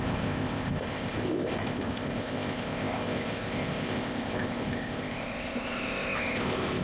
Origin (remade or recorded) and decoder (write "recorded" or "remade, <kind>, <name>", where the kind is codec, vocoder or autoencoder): remade, codec, ZipCodec